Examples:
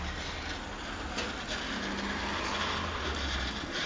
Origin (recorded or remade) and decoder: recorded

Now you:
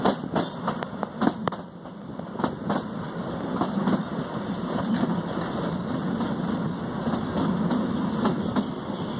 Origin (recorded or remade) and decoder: recorded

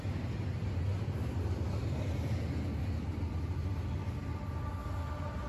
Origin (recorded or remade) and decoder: recorded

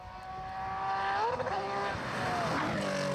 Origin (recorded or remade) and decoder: recorded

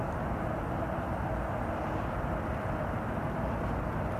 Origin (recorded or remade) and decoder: recorded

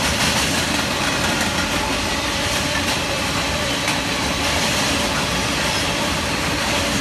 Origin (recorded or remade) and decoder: recorded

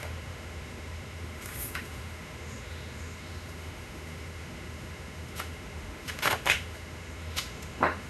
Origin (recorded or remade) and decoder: remade, autoencoder, DAC-VAE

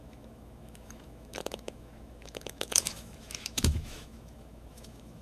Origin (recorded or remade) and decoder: remade, autoencoder, DAC-VAE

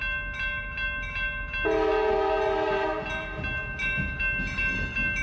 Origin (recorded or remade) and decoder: recorded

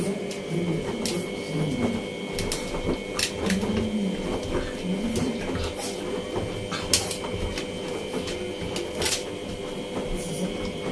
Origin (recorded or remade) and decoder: recorded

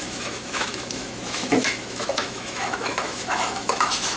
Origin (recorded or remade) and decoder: remade, autoencoder, DAC-VAE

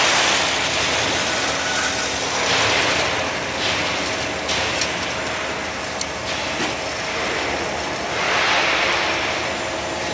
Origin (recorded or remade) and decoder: recorded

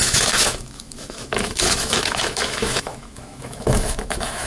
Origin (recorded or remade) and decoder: remade, autoencoder, DAC-VAE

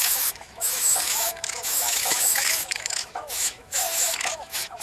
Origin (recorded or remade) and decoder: remade, autoencoder, DAC-VAE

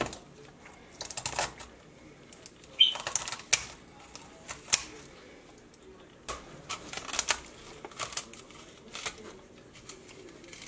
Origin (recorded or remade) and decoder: recorded